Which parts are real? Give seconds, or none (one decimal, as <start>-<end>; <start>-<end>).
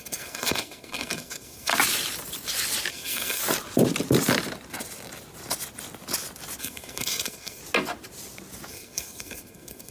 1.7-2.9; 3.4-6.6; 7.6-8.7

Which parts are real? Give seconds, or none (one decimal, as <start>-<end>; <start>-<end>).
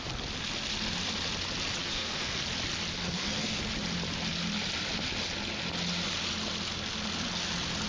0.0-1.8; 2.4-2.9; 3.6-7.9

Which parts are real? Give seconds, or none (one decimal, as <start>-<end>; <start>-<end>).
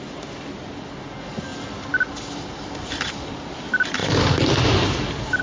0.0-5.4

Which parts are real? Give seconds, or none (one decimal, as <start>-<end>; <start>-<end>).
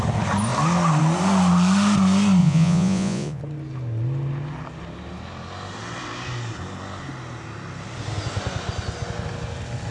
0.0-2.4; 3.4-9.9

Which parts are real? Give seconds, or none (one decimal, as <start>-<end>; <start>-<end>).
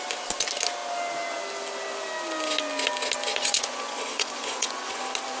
0.0-3.3; 5.0-5.4